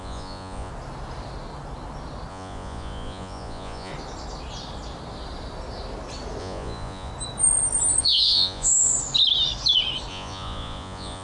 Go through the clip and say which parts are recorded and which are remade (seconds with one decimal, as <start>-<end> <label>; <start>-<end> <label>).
0.0-0.7 remade; 0.7-2.3 recorded; 2.3-3.9 remade; 3.9-6.4 recorded; 6.4-7.1 remade; 7.1-8.0 recorded; 8.0-8.9 remade; 8.9-10.1 recorded; 10.1-11.2 remade